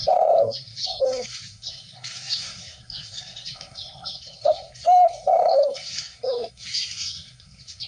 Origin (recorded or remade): remade